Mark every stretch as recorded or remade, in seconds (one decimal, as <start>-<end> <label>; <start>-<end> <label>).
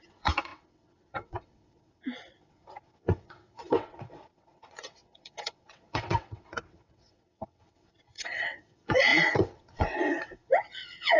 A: 0.0-11.2 remade